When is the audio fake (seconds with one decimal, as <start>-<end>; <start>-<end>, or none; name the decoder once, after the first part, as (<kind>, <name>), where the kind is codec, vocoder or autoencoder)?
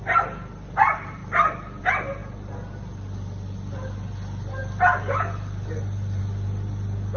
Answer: none